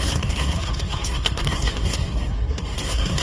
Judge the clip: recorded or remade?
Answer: remade